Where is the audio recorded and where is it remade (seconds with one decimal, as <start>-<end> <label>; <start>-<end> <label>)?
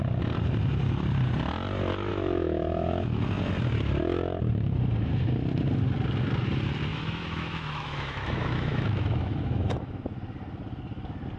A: 0.0-2.1 recorded; 2.1-3.2 remade; 3.2-6.9 recorded; 6.9-10.0 remade; 10.0-11.4 recorded